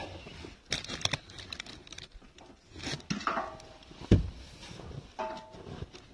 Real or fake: real